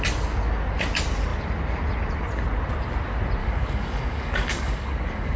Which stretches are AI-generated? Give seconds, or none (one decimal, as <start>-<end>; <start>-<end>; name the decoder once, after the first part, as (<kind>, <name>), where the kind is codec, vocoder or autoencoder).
3.4-5.4 (codec, DAC)